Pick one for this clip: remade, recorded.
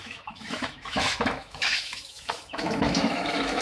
remade